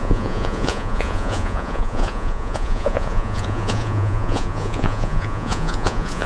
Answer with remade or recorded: remade